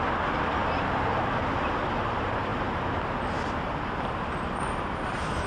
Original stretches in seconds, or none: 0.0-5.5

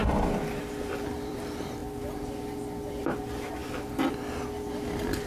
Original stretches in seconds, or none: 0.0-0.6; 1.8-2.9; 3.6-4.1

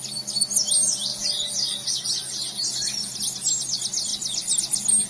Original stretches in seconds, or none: 0.0-5.1

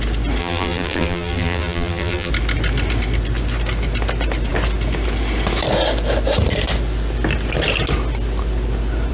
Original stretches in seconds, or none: 0.0-0.4; 2.3-9.1

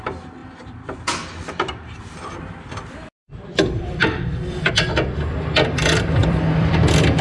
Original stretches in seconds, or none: 0.0-0.4; 4.7-6.2

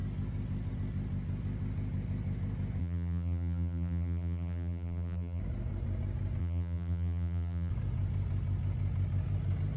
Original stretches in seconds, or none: 0.0-2.8; 5.4-6.4; 7.7-9.8